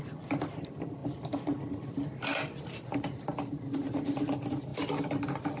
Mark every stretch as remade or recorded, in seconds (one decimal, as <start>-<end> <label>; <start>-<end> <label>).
0.0-5.6 recorded